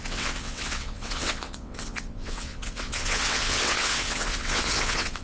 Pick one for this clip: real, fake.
fake